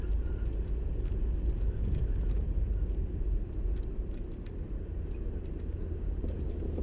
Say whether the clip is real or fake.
real